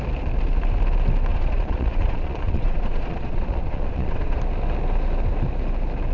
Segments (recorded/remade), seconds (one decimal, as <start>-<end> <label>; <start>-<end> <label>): 0.0-1.3 recorded; 1.3-4.4 remade; 4.4-6.1 recorded